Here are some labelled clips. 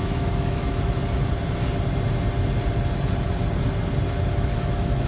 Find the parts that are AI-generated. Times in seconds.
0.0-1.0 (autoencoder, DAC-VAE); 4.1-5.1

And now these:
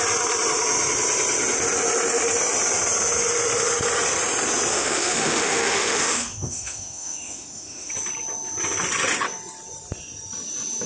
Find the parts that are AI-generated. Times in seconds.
4.7-7.9 (autoencoder, DAC-VAE)

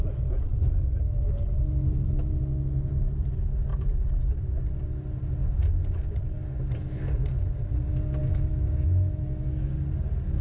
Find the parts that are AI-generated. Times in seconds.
8.2-9.7 (autoencoder, DAC-VAE)

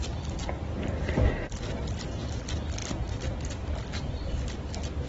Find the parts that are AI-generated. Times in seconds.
none

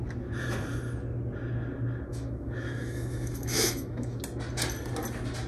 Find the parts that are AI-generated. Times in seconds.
2.1-4.2 (autoencoder, DAC-VAE)

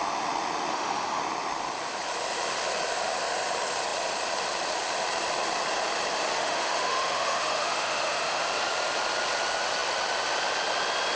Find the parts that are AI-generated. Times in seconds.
0.7-1.2 (autoencoder, DAC-VAE); 6.4-8.4

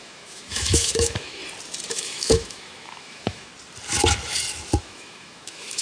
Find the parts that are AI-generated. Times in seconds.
0.0-1.4 (autoencoder, DAC-VAE); 1.9-3.5; 4.8-5.8